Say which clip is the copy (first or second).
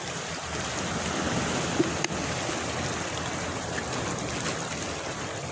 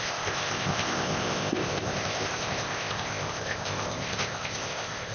second